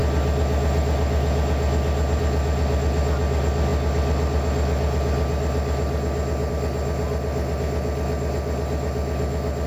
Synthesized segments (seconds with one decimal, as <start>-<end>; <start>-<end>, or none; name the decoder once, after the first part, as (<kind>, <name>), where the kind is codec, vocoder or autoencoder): none